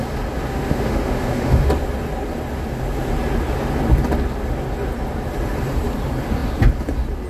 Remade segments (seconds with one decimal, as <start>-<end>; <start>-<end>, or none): 0.5-1.7